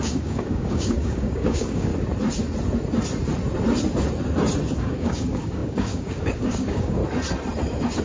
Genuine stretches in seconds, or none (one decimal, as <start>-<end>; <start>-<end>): 1.9-4.7; 7.0-8.0